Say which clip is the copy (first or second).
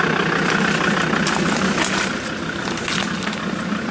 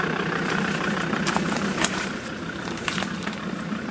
second